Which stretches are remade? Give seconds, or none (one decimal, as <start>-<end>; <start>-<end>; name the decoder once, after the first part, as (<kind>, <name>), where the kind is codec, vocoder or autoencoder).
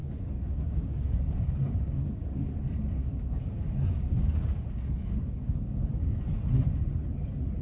0.0-2.5 (codec, DAC); 3.0-6.2